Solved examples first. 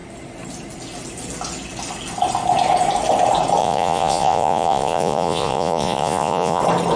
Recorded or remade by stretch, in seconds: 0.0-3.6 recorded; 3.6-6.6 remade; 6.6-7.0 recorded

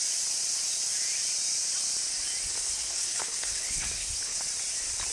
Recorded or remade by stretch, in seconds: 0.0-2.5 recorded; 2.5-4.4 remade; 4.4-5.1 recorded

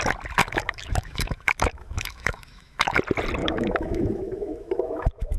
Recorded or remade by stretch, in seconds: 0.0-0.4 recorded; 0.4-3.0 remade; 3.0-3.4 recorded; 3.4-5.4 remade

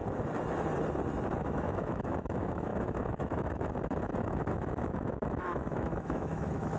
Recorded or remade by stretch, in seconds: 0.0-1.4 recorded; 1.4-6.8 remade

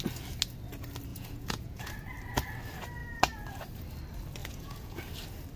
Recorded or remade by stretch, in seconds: 0.0-1.1 recorded; 1.1-1.9 remade; 1.9-4.4 recorded; 4.4-5.0 remade; 5.0-5.6 recorded

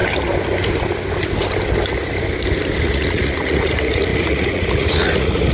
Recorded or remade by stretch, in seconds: 0.0-2.8 recorded; 2.8-5.5 remade

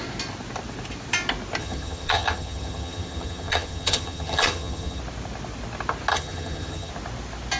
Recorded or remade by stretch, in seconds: 0.0-1.6 recorded; 1.6-5.0 remade; 5.0-6.1 recorded; 6.1-6.9 remade; 6.9-7.6 recorded